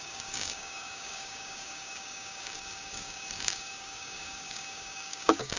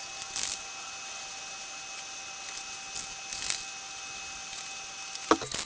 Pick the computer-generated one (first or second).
first